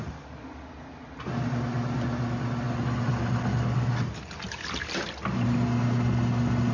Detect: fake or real real